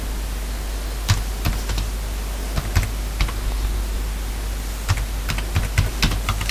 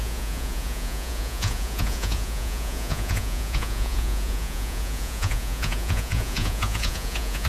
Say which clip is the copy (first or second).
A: second